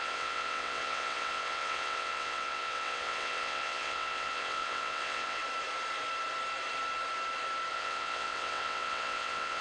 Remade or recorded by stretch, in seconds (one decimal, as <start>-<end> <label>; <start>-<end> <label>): 0.0-5.4 remade; 5.4-7.7 recorded; 7.7-9.6 remade